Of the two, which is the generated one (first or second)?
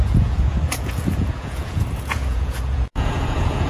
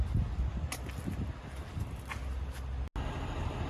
first